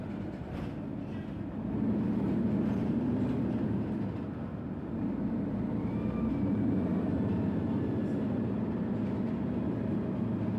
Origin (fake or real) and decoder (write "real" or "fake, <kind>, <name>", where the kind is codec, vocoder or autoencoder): fake, vocoder, BigVGAN v2